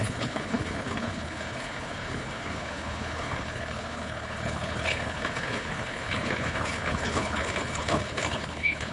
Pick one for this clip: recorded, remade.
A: remade